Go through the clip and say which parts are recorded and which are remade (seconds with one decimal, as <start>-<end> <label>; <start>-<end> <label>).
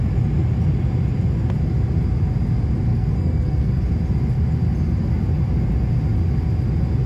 0.0-2.9 recorded; 2.9-3.8 remade; 3.8-7.1 recorded